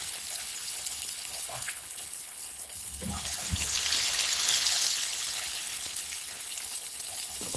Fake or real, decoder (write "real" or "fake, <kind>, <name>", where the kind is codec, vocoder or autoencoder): fake, codec, HILCodec